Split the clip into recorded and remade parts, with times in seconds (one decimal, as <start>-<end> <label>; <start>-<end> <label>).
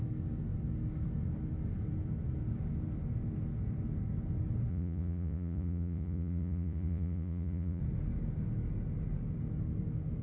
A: 0.0-4.7 recorded; 4.7-7.8 remade; 7.8-10.2 recorded